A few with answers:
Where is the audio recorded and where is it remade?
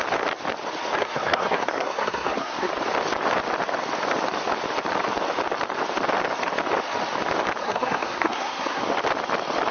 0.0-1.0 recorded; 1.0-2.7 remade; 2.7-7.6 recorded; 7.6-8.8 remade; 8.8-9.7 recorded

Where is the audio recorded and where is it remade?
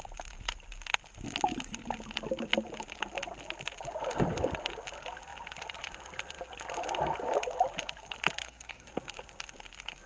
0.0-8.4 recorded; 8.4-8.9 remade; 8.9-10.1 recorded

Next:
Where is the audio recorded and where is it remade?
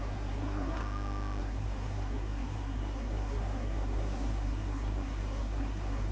0.0-0.8 remade; 0.8-1.4 recorded; 1.4-6.1 remade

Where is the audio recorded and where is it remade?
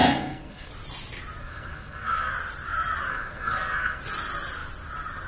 0.0-0.7 remade; 0.7-1.4 recorded; 1.4-2.3 remade; 2.3-3.1 recorded; 3.1-4.0 remade; 4.0-5.3 recorded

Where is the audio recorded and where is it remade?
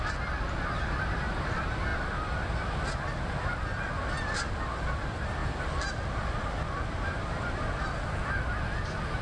0.0-9.2 recorded